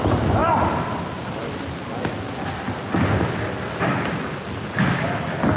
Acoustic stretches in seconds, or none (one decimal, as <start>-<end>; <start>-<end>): 0.0-5.6